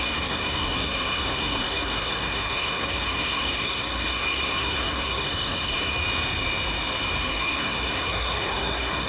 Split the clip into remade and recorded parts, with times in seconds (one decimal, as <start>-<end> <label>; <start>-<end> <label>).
0.0-5.9 remade; 5.9-7.3 recorded; 7.3-9.1 remade